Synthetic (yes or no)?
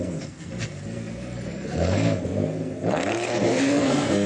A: yes